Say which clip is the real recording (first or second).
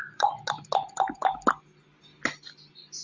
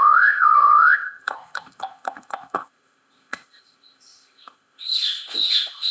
first